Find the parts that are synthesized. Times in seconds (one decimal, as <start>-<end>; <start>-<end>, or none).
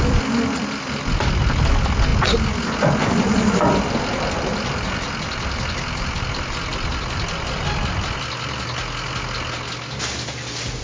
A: none